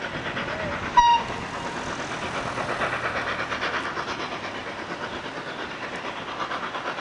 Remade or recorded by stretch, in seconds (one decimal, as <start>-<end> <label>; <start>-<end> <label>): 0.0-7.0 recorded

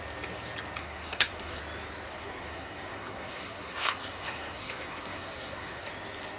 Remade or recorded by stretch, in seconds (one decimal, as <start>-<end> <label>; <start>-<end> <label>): 0.0-0.8 recorded; 0.8-1.6 remade; 1.6-2.1 recorded; 2.1-5.9 remade; 5.9-6.4 recorded

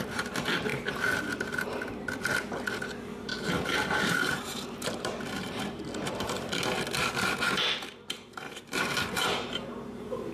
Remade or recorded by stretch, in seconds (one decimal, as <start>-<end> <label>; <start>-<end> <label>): 0.0-3.3 recorded; 3.3-5.8 remade; 5.8-10.3 recorded

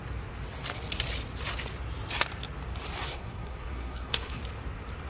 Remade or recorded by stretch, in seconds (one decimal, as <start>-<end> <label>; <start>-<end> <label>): 0.0-3.0 recorded; 3.0-4.4 remade; 4.4-5.1 recorded

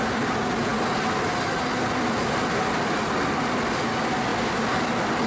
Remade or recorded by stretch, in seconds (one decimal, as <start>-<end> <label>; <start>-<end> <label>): 0.0-5.3 recorded

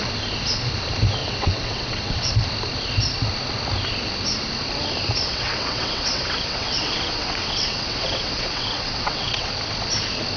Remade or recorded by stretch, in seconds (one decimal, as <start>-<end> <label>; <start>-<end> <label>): 0.0-1.2 recorded; 1.2-2.3 remade; 2.3-5.3 recorded; 5.3-9.5 remade; 9.5-10.4 recorded

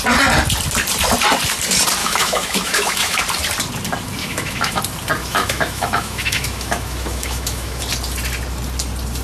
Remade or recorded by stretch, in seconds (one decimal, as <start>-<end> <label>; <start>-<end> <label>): 0.0-2.0 recorded; 2.0-3.2 remade; 3.2-4.2 recorded; 4.2-4.8 remade; 4.8-5.2 recorded; 5.2-7.8 remade; 7.8-9.2 recorded